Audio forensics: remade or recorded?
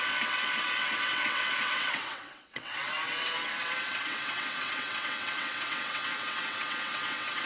remade